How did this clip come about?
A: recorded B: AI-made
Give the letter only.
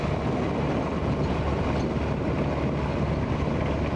A